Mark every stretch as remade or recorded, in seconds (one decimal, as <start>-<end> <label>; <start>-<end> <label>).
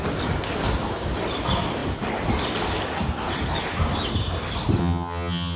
0.0-4.8 recorded; 4.8-5.6 remade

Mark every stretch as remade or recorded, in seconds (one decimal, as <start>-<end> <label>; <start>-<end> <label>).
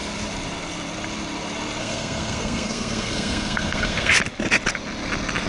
0.0-1.8 recorded; 1.8-4.1 remade; 4.1-5.5 recorded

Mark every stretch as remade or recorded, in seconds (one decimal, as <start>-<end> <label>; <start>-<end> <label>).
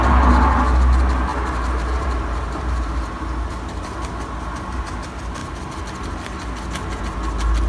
0.0-1.3 recorded; 1.3-4.8 remade; 4.8-7.7 recorded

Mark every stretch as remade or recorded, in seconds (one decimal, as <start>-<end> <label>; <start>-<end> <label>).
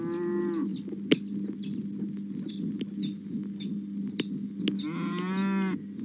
0.0-6.0 recorded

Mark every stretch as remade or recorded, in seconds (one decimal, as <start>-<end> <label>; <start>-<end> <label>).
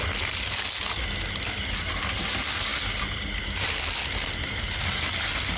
0.0-5.6 recorded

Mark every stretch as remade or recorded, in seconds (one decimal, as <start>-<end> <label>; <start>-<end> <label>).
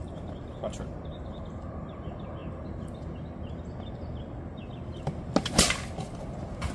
0.0-6.7 recorded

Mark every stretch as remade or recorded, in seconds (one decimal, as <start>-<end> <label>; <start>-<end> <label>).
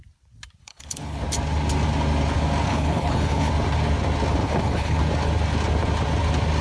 0.0-0.6 recorded; 0.6-1.2 remade; 1.2-2.7 recorded; 2.7-3.5 remade; 3.5-4.4 recorded; 4.4-5.0 remade; 5.0-6.6 recorded